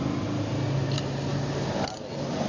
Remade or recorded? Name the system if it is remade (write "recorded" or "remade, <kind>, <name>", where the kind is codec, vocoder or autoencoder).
recorded